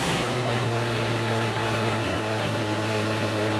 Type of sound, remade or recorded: remade